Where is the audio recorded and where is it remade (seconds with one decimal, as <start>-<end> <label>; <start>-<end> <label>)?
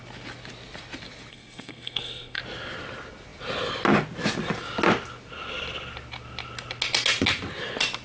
0.0-1.3 recorded; 1.3-2.4 remade; 2.4-8.0 recorded